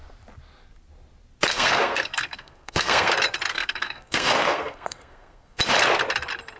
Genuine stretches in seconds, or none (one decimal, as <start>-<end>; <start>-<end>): 0.0-1.5; 3.1-3.5; 5.6-6.6